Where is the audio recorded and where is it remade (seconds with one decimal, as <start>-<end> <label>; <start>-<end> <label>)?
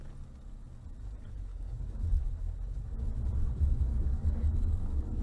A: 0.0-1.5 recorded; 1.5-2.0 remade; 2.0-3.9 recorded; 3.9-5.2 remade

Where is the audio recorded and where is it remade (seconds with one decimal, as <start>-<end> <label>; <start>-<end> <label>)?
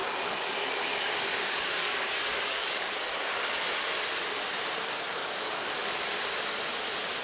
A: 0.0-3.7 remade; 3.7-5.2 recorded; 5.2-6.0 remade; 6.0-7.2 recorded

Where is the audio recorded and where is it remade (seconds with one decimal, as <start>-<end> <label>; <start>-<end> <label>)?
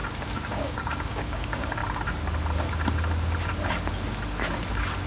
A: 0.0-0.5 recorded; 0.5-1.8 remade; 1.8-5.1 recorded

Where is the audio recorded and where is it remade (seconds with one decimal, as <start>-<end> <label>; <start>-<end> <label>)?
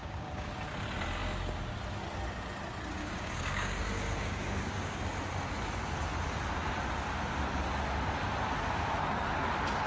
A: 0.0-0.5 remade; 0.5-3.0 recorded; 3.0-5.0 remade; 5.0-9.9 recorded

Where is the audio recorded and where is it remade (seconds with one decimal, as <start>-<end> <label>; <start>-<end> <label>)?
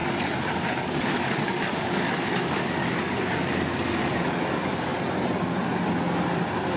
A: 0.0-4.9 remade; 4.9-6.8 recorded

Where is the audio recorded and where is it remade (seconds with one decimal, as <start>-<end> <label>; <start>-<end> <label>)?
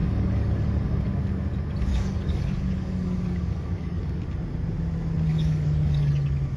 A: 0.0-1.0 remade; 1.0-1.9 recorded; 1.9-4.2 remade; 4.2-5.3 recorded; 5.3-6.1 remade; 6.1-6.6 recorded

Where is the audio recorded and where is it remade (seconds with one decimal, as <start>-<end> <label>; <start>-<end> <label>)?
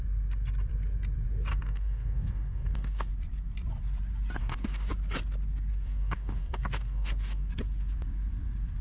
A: 0.0-1.5 recorded; 1.5-3.1 remade; 3.1-4.4 recorded; 4.4-4.9 remade; 4.9-5.7 recorded; 5.7-7.5 remade; 7.5-8.8 recorded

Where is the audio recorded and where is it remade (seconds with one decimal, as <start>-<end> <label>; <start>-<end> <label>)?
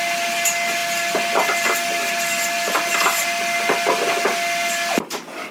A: 0.0-5.5 recorded